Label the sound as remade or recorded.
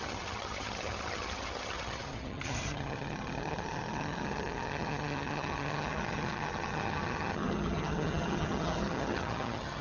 remade